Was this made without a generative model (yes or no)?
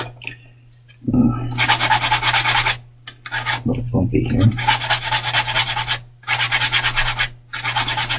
yes